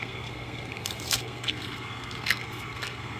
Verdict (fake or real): fake